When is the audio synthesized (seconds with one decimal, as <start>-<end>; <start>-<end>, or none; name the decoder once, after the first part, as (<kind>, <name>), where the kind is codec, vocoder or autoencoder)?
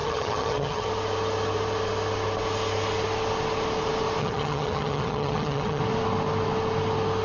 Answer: 0.0-0.9 (vocoder, HiFi-GAN); 4.2-5.8